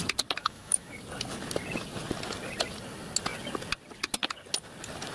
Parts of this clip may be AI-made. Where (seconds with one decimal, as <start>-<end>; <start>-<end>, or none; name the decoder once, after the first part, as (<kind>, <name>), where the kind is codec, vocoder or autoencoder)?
0.4-0.9 (autoencoder, DAC-VAE)